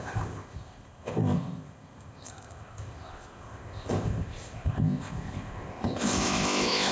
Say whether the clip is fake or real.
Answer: fake